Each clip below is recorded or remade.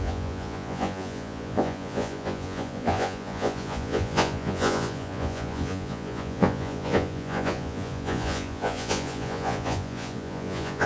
remade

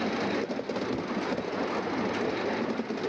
recorded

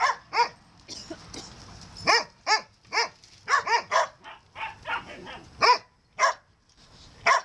recorded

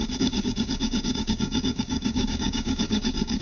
remade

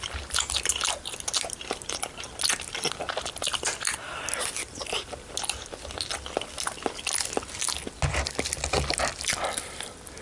recorded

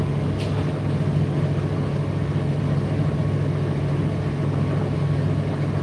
recorded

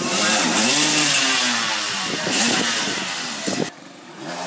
remade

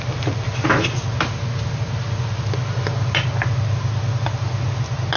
recorded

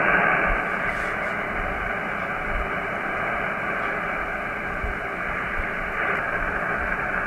remade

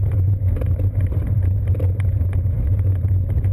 remade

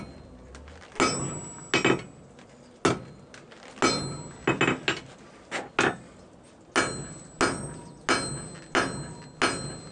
recorded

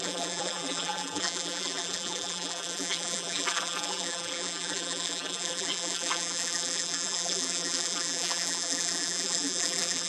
remade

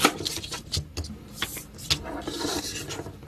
recorded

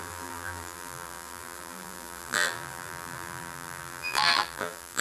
remade